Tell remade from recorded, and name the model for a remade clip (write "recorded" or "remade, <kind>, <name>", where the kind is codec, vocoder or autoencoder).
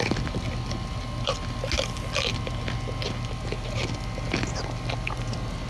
recorded